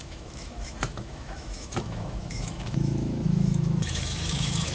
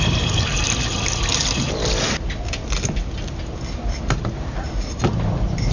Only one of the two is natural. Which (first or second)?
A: second